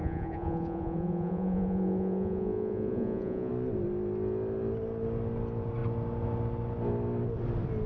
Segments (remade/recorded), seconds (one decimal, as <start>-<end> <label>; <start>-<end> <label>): 0.0-3.5 remade; 3.5-7.9 recorded